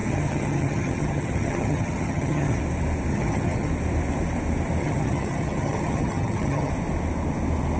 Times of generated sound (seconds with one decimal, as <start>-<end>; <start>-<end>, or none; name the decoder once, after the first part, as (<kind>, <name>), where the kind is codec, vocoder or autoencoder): 0.0-2.6 (vocoder, HiFi-GAN); 3.1-3.7; 4.8-6.7